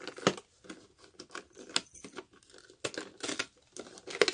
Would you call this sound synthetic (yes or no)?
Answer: no